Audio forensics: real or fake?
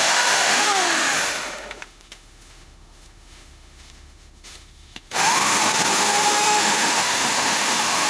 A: fake